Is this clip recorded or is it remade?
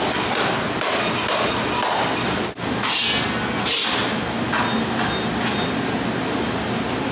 recorded